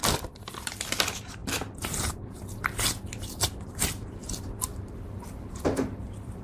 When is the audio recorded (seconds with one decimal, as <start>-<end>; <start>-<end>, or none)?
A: 0.7-1.4; 3.8-4.2; 4.9-6.4